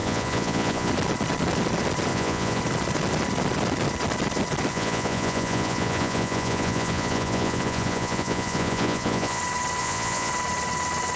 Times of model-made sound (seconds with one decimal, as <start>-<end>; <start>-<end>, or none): 0.0-0.9; 2.1-2.6; 4.7-9.4; 9.8-10.3